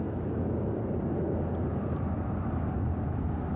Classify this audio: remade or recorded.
recorded